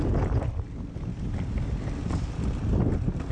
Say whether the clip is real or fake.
real